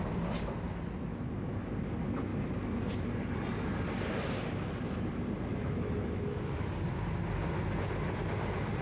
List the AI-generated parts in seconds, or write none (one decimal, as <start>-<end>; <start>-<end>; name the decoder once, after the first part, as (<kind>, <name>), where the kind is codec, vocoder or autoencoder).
1.1-1.7 (autoencoder, DAC-VAE); 5.5-6.7